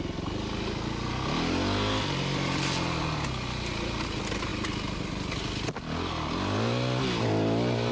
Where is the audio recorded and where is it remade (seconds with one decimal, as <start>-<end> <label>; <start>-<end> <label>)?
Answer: 0.0-7.9 recorded